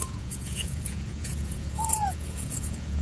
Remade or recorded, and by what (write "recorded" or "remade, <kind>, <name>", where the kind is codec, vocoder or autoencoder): remade, vocoder, Vocos